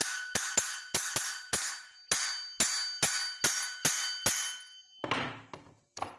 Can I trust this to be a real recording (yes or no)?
yes